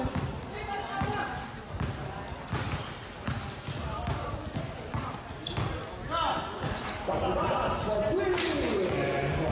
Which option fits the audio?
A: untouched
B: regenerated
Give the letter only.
A